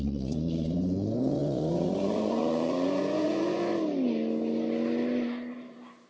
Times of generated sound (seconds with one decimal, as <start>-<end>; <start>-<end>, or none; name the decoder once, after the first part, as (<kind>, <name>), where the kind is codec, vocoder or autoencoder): 0.0-3.7 (vocoder, Vocos)